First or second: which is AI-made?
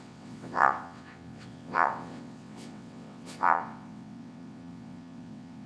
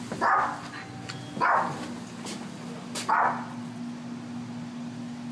first